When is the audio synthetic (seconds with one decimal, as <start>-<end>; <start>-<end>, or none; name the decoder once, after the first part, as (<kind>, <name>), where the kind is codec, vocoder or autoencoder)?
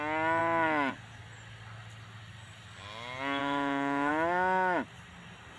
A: 3.4-4.1 (autoencoder, DAC-VAE)